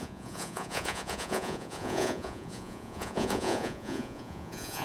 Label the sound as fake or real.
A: fake